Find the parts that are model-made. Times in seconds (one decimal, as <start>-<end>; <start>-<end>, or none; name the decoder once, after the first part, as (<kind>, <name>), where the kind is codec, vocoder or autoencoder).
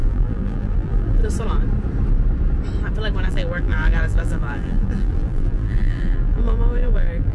0.0-1.2 (vocoder, BigVGAN v2); 3.3-7.3